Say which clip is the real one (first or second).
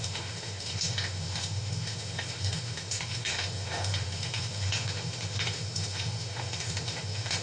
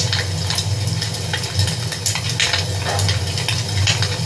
second